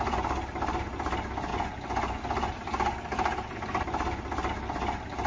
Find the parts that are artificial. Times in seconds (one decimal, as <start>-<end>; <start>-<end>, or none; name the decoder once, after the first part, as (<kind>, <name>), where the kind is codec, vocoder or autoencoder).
1.5-2.2 (vocoder, Vocos)

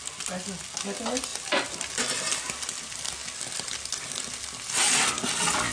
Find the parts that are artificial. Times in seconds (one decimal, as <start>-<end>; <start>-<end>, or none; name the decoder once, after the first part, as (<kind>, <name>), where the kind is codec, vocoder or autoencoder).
1.3-2.4 (vocoder, BigVGAN v2)

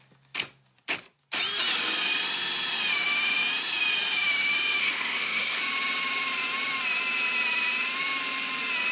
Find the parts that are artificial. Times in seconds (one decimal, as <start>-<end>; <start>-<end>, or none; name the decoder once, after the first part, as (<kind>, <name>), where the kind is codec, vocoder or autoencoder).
4.8-5.6 (codec, SNAC)

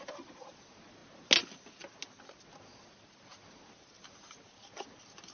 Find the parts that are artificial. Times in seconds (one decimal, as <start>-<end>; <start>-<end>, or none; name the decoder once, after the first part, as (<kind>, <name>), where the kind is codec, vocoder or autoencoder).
none

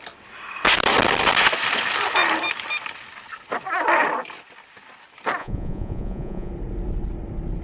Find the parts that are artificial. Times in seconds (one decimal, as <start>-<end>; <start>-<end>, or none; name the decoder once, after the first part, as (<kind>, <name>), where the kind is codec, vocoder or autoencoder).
5.4-6.5 (vocoder, Vocos)

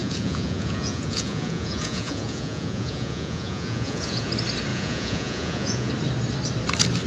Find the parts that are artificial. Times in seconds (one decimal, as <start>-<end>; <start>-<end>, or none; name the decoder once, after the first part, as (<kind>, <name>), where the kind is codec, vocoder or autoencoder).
0.0-4.3 (vocoder, Vocos); 4.7-5.9

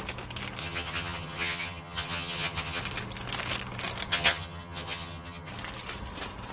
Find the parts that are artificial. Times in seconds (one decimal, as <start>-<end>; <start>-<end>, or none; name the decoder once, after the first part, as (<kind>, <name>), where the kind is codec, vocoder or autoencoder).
0.6-2.8 (vocoder, HiFi-GAN); 4.1-5.5